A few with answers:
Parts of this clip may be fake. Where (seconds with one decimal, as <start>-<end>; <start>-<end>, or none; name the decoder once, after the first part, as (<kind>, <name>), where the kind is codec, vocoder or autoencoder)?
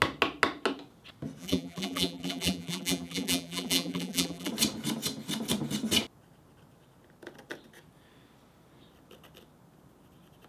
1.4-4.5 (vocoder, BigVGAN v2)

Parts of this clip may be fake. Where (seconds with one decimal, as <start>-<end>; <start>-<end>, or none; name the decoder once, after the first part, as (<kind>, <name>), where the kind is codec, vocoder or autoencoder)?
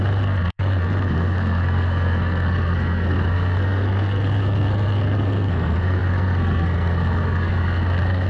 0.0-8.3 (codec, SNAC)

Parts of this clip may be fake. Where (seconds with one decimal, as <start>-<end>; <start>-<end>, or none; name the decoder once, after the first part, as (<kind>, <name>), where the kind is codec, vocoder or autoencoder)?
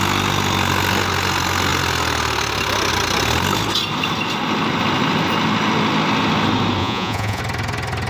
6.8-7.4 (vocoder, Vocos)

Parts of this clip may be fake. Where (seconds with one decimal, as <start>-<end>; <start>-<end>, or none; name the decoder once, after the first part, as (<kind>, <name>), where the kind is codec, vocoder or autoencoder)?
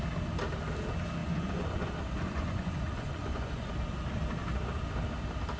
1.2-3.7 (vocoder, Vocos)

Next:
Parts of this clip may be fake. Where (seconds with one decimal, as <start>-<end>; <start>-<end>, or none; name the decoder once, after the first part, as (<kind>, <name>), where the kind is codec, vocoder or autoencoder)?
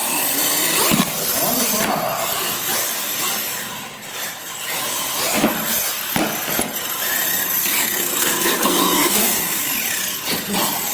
7.6-9.6 (codec, SNAC)